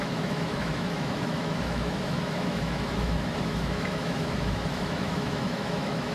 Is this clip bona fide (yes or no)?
no